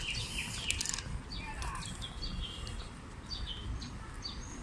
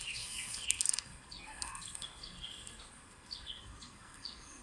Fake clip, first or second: second